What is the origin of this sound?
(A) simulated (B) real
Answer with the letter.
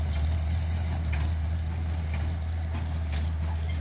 B